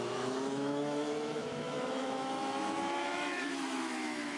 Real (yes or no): no